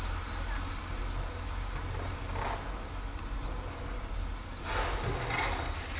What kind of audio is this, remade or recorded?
recorded